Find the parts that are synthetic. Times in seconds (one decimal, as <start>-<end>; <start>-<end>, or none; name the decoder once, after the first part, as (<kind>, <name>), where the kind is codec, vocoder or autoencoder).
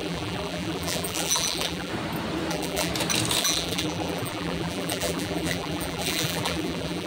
0.0-1.9 (vocoder, BigVGAN v2); 2.5-2.9; 3.4-7.1